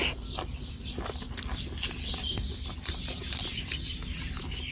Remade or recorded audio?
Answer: recorded